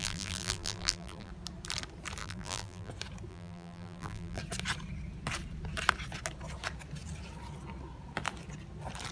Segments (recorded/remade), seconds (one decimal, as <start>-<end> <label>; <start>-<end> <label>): 0.0-1.3 remade; 1.3-2.2 recorded; 2.2-2.9 remade; 2.9-3.3 recorded; 3.3-4.4 remade; 4.4-9.1 recorded

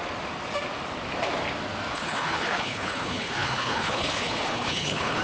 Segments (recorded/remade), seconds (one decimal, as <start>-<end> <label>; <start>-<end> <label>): 0.0-1.9 recorded; 1.9-5.2 remade

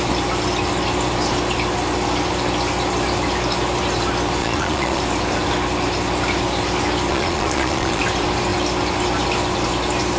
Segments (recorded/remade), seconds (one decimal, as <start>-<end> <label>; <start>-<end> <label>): 0.0-4.4 recorded; 4.4-5.0 remade; 5.0-7.1 recorded; 7.1-8.0 remade; 8.0-10.2 recorded